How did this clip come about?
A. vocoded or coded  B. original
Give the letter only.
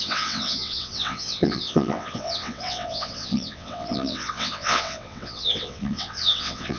A